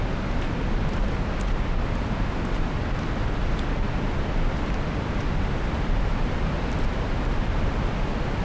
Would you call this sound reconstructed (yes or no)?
no